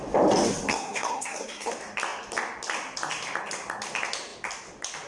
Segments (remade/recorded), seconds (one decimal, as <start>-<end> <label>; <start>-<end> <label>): 0.0-0.7 recorded; 0.7-1.7 remade; 1.7-5.1 recorded